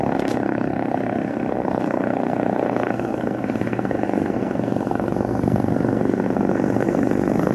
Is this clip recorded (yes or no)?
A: no